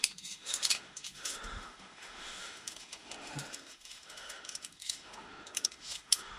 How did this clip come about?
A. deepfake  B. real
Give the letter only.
A